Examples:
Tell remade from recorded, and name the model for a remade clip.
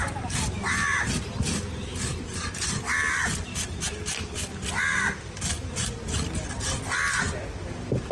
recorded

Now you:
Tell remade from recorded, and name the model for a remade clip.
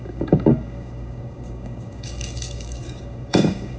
remade, codec, DAC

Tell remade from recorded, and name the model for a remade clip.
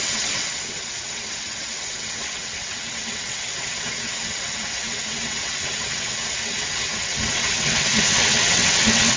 remade, vocoder, WaveNeXt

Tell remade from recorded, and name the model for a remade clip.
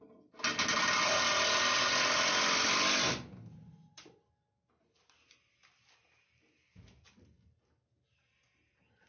recorded